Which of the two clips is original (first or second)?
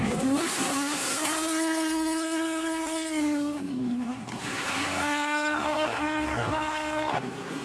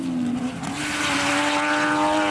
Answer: second